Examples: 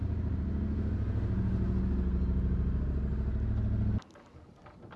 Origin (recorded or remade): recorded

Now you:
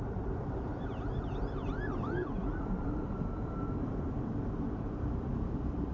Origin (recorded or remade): remade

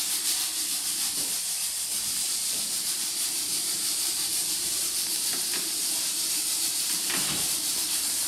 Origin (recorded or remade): remade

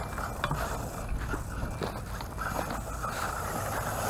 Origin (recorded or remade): recorded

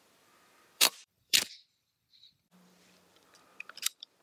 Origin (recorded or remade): remade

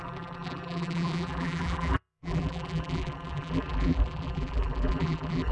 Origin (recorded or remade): remade